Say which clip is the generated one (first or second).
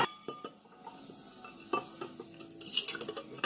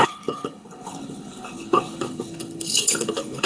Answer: second